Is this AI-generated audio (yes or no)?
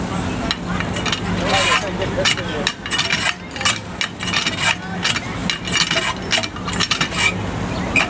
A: no